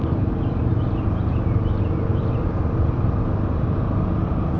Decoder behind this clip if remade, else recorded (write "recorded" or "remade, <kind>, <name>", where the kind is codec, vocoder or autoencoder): recorded